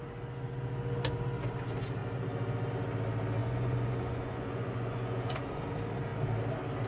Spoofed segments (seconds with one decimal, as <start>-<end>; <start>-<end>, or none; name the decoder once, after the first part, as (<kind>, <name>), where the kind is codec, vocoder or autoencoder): 3.4-5.6 (vocoder, Vocos)